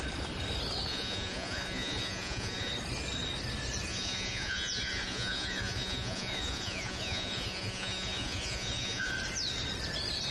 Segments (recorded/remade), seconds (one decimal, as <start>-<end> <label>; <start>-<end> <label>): 0.0-0.9 recorded; 0.9-2.7 remade; 2.7-3.9 recorded; 3.9-9.1 remade; 9.1-10.3 recorded